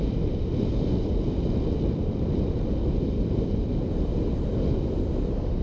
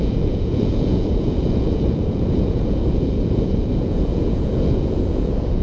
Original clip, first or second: first